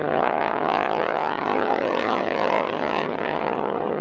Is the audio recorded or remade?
remade